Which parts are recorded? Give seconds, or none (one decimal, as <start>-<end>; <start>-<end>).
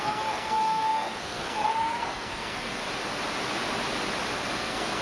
2.8-4.5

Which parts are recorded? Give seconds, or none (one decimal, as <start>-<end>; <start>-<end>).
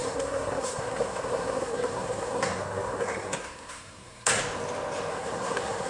4.4-5.1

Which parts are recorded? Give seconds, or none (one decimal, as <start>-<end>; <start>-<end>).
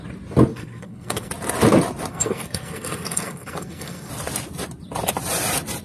0.0-0.5; 1.3-2.1; 4.1-5.8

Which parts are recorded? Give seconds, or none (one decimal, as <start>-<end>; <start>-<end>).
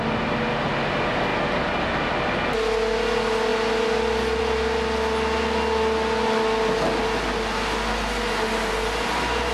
0.0-9.5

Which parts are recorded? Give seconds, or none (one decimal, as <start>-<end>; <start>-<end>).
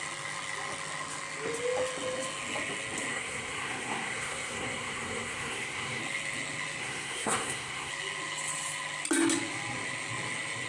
0.0-3.1; 6.0-6.8; 7.9-10.7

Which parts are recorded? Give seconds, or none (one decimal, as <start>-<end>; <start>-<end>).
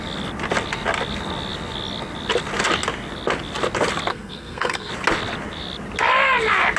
0.0-4.1; 4.9-6.8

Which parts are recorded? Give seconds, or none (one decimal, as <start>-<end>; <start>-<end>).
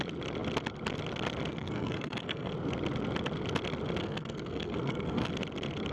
0.0-1.5; 2.5-4.0; 5.3-5.9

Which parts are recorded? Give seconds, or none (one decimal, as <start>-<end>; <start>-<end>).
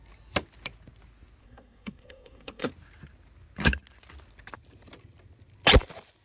0.0-1.4; 2.7-6.2